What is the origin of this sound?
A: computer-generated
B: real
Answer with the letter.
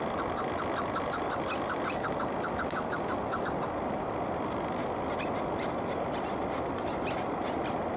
B